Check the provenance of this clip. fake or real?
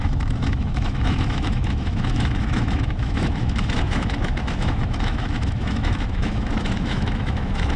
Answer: fake